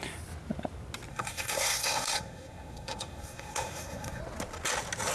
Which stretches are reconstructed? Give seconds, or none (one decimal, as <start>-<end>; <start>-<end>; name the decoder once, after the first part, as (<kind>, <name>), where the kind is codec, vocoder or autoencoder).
1.1-4.2 (codec, SNAC)